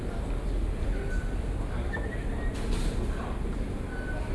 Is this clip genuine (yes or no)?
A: yes